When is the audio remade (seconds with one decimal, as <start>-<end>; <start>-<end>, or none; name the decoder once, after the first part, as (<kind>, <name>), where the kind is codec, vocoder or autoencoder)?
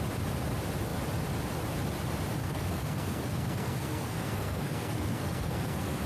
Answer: 2.4-6.1 (codec, SNAC)